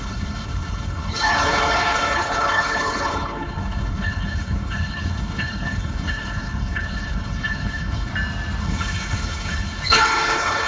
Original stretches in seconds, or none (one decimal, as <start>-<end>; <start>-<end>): 8.1-8.6